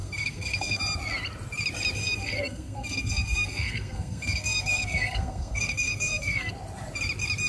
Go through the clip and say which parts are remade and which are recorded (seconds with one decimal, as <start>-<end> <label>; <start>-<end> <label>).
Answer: 0.0-0.8 remade; 0.8-2.0 recorded; 2.0-6.5 remade; 6.5-7.5 recorded